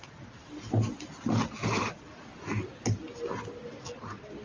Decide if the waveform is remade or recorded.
recorded